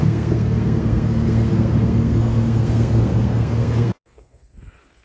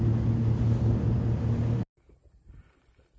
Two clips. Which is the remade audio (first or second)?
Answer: first